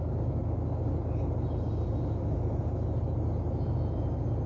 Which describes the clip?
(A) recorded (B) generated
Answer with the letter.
A